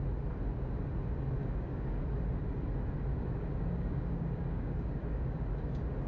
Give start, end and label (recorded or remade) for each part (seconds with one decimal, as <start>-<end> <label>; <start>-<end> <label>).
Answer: 0.0-1.4 recorded; 1.4-2.0 remade; 2.0-3.1 recorded; 3.1-5.4 remade; 5.4-6.1 recorded